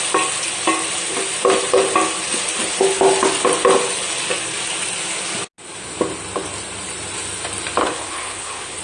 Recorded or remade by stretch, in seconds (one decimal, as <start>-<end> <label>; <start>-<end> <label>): 0.0-7.8 recorded; 7.8-8.8 remade